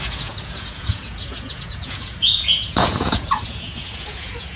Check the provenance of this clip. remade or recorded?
remade